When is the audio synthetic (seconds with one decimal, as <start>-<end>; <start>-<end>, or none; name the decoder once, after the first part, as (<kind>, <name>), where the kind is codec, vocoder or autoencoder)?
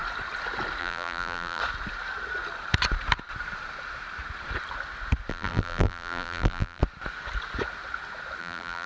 0.8-1.6 (vocoder, BigVGAN v2); 5.3-6.8; 8.4-8.9